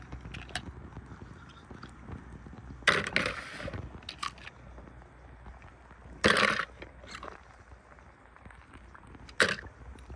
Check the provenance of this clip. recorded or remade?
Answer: recorded